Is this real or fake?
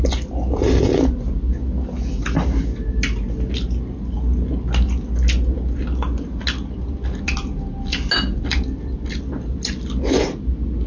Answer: real